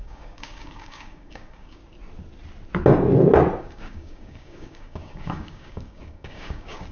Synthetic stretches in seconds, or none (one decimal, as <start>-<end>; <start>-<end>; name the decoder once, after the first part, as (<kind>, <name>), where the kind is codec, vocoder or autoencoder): 0.0-1.8 (codec, DAC); 3.6-6.9